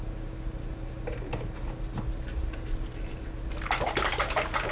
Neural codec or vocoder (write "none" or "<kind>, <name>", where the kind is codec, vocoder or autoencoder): none